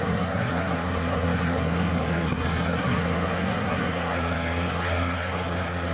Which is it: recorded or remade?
remade